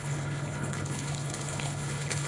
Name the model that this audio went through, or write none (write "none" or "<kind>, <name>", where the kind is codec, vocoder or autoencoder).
codec, HILCodec